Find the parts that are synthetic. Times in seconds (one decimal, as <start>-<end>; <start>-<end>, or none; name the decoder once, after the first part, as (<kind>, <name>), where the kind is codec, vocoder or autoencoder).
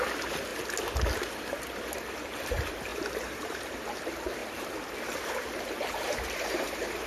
0.0-0.5 (vocoder, BigVGAN v2); 1.1-4.4; 5.3-7.1